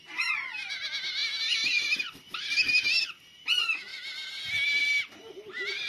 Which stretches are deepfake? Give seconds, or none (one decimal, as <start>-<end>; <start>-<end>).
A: 1.2-3.0